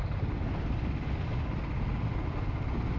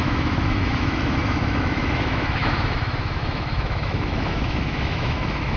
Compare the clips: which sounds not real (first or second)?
second